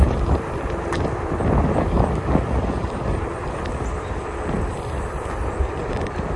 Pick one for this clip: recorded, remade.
remade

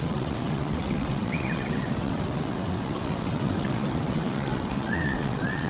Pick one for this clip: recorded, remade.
remade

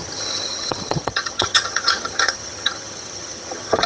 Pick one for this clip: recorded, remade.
remade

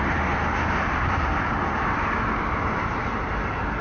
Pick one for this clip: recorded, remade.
recorded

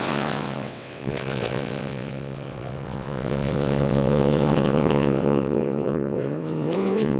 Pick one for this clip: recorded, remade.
remade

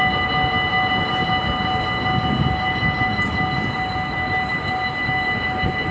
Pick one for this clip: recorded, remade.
recorded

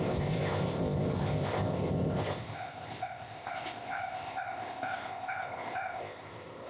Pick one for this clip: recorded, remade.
remade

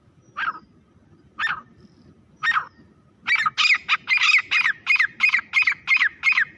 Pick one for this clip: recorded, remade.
recorded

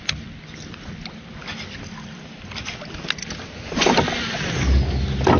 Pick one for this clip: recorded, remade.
recorded